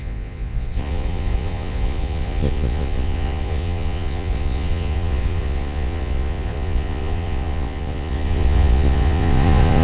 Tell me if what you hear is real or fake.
fake